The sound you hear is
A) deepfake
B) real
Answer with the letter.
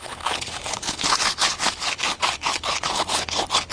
A